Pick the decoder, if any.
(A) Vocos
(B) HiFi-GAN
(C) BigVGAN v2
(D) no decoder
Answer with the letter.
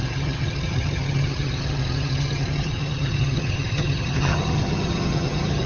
B